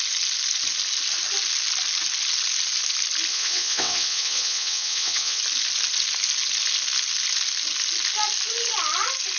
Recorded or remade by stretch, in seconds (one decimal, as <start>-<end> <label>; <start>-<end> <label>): 0.0-3.3 recorded; 3.3-5.4 remade; 5.4-9.4 recorded